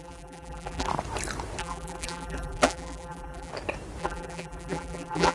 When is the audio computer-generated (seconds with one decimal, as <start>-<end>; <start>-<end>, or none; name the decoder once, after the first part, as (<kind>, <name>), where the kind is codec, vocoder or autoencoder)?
0.0-0.9 (vocoder, BigVGAN v2); 1.6-3.5; 4.0-5.3